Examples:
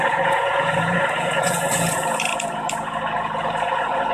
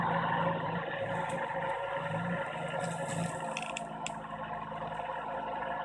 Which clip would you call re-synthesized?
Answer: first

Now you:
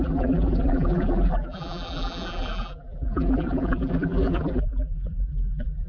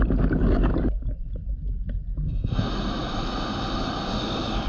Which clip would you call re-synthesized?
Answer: first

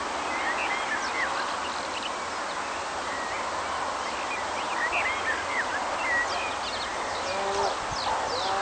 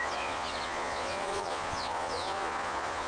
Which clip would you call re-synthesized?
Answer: second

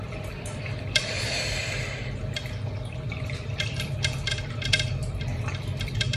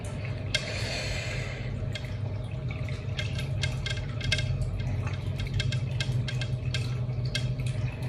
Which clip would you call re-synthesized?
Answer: first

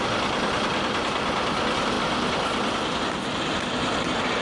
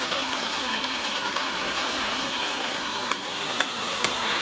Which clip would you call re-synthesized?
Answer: second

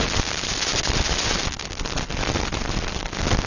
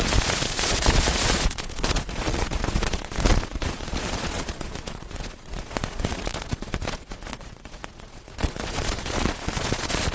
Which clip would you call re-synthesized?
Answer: second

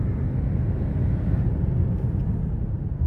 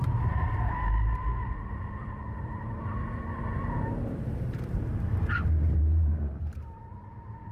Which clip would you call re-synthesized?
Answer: second